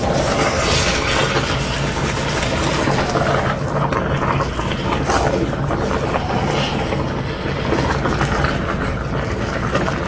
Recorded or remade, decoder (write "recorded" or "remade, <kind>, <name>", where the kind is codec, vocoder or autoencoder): recorded